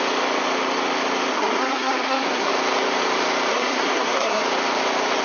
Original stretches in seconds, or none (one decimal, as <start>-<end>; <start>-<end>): 0.0-1.3; 2.5-3.5; 4.4-5.2